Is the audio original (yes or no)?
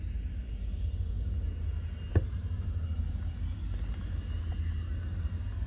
yes